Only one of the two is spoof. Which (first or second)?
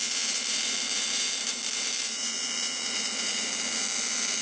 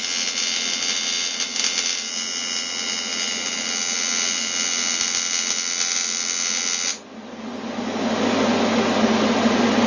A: first